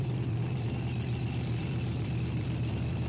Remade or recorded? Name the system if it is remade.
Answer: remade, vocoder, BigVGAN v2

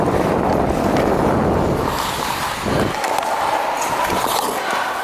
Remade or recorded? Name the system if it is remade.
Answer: recorded